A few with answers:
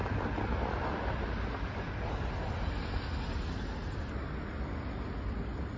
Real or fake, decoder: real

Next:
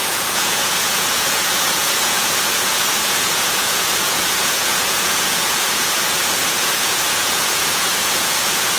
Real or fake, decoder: fake, vocoder, Vocos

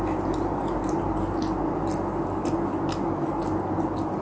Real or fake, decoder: real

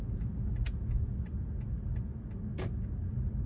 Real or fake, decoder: real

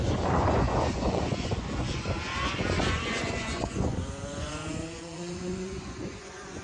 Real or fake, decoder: fake, vocoder, Vocos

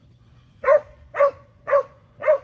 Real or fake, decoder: fake, vocoder, Vocos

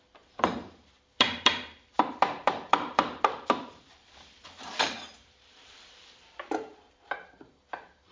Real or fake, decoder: fake, vocoder, BigVGAN v2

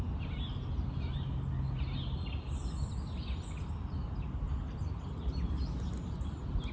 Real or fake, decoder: real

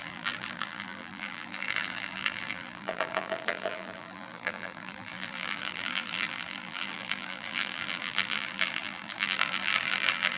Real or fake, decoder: fake, vocoder, BigVGAN v2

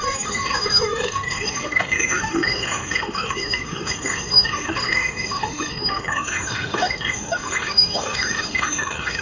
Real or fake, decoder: fake, autoencoder, DAC-VAE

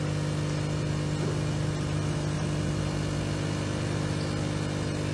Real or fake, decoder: real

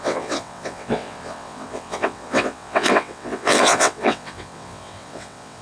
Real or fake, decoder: fake, vocoder, WaveNeXt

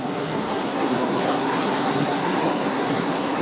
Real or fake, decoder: fake, codec, SNAC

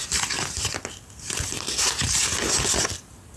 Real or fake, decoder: real